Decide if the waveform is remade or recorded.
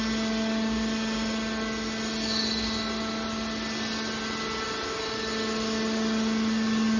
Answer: recorded